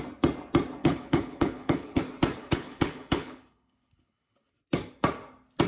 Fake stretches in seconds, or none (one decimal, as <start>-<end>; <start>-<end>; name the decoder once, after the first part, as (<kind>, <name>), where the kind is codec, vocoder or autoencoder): 0.8-2.0 (codec, HILCodec); 2.4-4.5